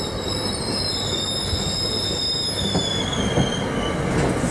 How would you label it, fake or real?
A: real